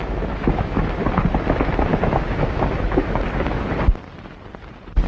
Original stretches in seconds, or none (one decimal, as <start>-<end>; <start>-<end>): 1.0-1.9; 3.7-5.1